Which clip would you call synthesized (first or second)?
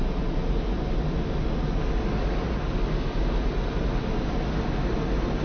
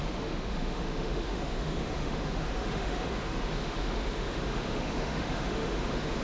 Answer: second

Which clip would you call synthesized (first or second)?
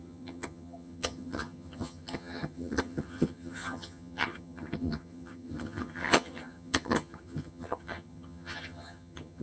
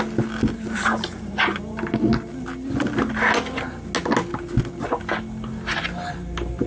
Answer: first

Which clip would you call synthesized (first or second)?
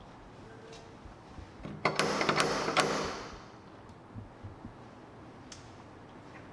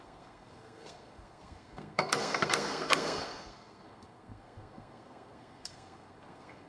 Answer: second